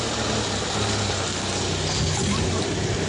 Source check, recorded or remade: recorded